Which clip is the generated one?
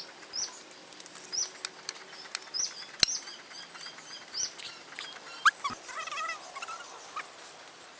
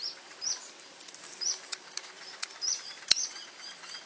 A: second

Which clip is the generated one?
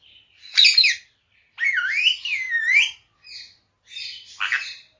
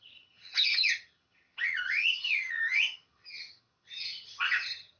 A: second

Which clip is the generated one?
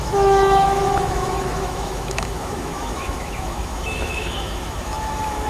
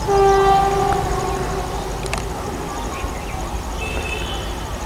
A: first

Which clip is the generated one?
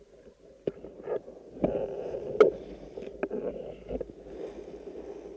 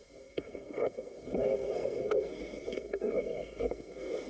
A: second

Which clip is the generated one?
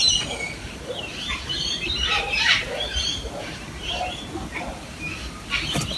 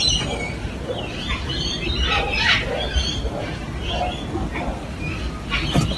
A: first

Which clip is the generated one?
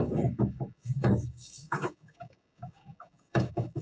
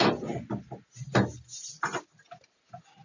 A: first